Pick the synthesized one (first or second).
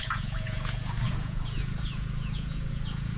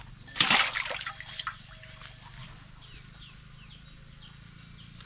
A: first